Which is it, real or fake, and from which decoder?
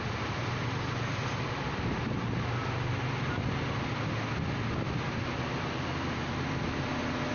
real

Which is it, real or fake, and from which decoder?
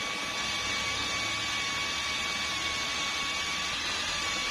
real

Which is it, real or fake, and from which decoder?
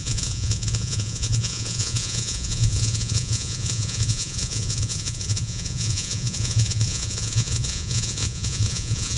fake, vocoder, Vocos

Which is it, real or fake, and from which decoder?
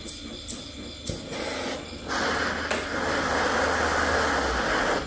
real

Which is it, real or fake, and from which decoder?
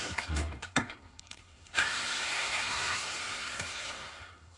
fake, codec, SNAC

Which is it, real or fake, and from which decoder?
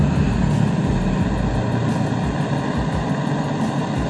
real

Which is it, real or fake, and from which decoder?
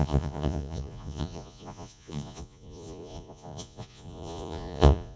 fake, vocoder, Vocos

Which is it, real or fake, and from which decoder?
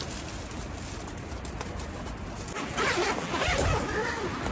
real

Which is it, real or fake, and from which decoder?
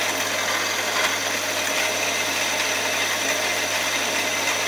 real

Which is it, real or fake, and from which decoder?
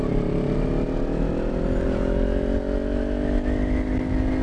real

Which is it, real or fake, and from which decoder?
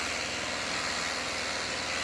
real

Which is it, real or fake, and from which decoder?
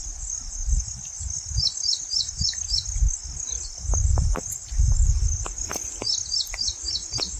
real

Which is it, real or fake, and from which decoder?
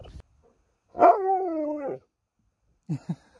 real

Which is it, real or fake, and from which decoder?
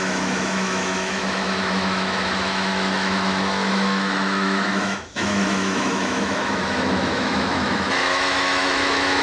fake, autoencoder, DAC-VAE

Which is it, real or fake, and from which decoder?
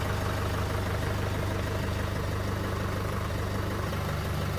real